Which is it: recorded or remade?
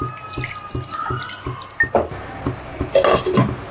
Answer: recorded